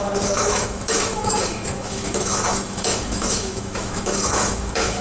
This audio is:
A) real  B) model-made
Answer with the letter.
B